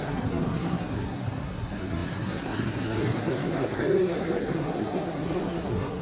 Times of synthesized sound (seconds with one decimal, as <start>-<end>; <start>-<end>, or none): 0.0-6.0